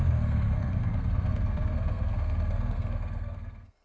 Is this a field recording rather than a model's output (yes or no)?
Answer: no